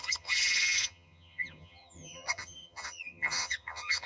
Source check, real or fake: fake